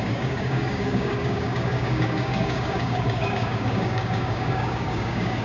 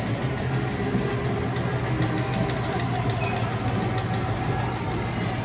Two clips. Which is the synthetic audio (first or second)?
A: first